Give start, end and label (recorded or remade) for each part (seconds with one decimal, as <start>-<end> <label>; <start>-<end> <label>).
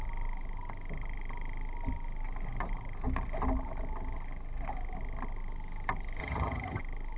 0.0-6.2 recorded; 6.2-6.8 remade; 6.8-7.2 recorded